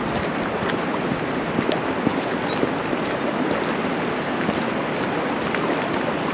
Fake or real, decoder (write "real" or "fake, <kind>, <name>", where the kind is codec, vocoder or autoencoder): real